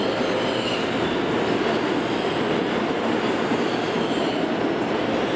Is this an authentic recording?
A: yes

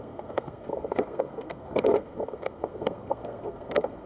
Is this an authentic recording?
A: no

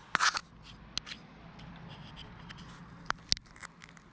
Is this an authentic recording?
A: yes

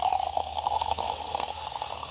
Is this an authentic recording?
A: no